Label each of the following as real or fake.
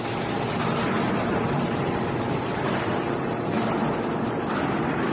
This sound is real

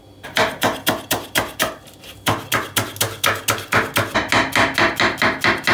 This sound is real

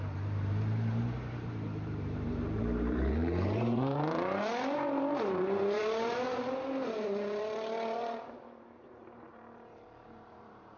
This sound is fake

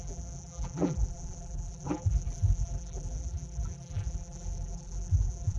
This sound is fake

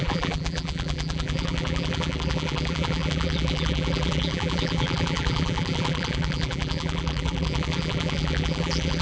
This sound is fake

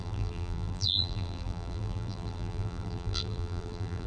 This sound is fake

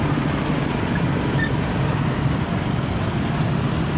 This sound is real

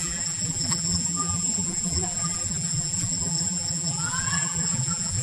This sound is fake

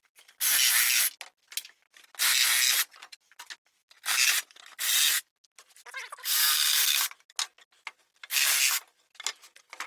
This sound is real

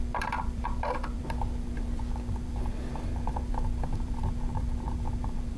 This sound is fake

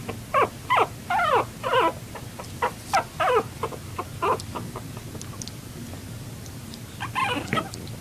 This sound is real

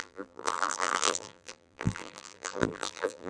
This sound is fake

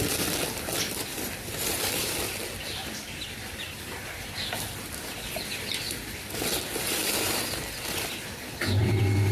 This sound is fake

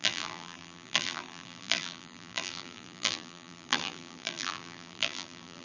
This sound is fake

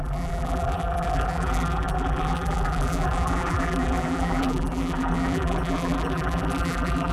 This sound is fake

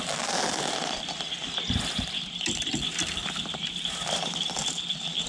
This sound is fake